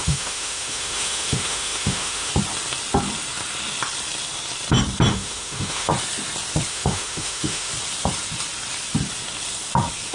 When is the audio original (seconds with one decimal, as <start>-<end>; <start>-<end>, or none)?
2.3-5.1; 5.9-6.7; 7.7-10.1